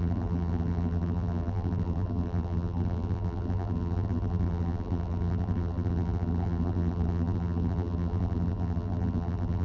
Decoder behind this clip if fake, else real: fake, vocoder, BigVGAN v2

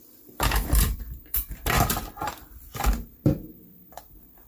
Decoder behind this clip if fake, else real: fake, vocoder, BigVGAN v2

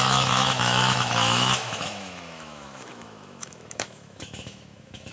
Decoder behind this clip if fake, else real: fake, autoencoder, DAC-VAE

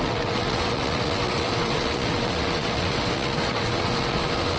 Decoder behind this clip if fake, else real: fake, vocoder, WaveNeXt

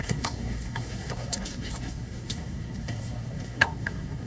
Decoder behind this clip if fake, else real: fake, codec, SNAC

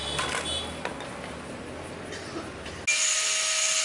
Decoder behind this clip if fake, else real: real